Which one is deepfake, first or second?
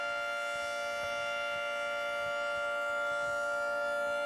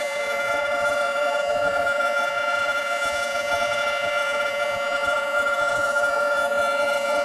second